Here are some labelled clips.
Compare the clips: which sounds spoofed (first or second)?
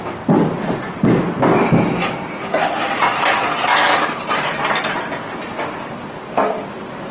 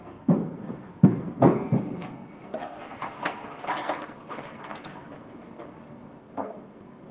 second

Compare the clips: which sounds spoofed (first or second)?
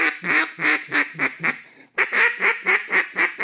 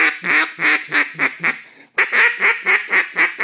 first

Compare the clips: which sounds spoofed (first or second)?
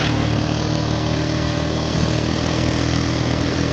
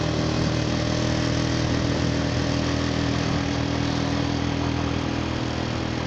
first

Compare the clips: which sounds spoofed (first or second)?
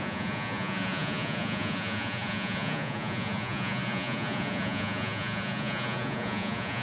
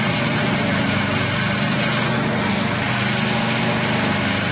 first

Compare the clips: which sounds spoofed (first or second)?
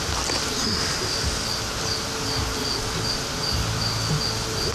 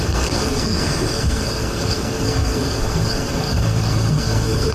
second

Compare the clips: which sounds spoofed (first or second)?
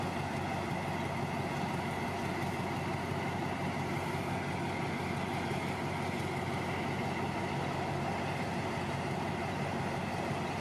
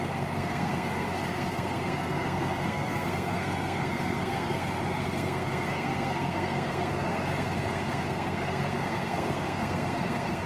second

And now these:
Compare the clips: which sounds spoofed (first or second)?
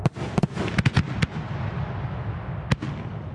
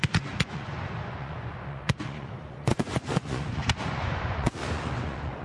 second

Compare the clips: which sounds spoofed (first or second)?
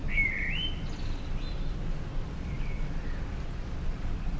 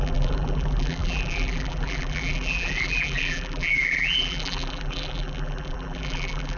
second